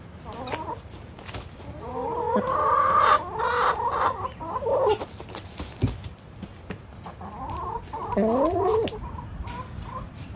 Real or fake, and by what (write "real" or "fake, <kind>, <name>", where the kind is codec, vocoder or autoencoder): real